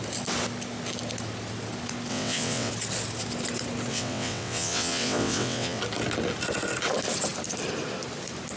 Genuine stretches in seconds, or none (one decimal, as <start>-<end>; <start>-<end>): 0.0-2.1; 2.7-3.9; 5.8-8.6